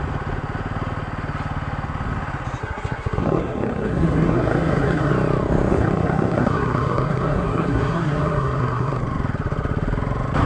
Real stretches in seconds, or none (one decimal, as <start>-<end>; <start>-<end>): 0.0-2.6; 5.1-5.7; 9.0-10.5

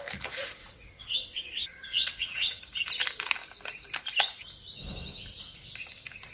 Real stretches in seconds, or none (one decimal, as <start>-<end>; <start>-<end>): 0.0-0.6; 2.6-6.3

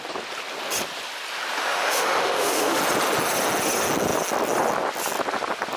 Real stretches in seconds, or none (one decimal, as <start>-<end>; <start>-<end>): 0.0-1.6; 2.8-5.8

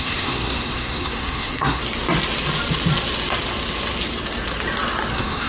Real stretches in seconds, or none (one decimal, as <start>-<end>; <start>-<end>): 1.8-5.1

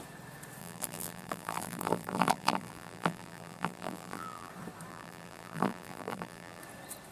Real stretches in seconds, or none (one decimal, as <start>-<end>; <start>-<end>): 0.0-0.6; 4.5-4.9; 6.6-7.1

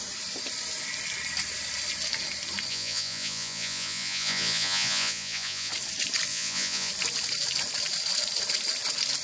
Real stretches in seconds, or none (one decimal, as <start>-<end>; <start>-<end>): 0.0-2.7; 5.7-6.3; 6.9-9.2

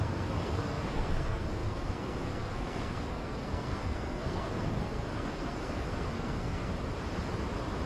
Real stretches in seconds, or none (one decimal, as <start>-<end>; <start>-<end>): 6.7-7.9

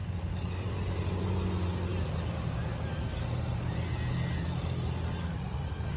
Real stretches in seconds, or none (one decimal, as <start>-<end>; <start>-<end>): 1.4-6.0